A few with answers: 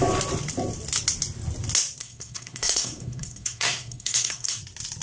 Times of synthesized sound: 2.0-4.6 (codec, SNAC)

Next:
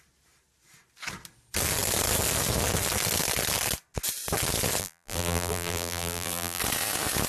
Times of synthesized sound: 4.8-6.6 (vocoder, BigVGAN v2)